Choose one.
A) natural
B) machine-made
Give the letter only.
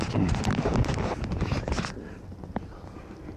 A